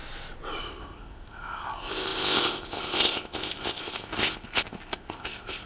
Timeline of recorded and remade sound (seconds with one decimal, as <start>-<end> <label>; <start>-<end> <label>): 0.0-0.6 recorded; 0.6-5.7 remade